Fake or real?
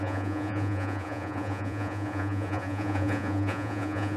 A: fake